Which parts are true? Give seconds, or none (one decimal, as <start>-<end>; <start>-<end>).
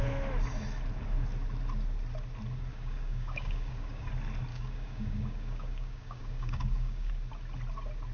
0.0-2.7; 4.1-4.5; 7.1-8.1